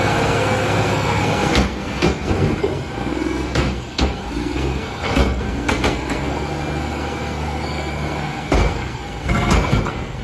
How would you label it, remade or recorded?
remade